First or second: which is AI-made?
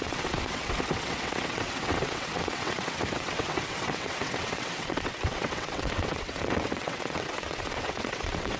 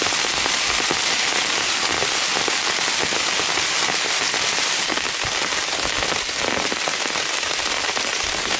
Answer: first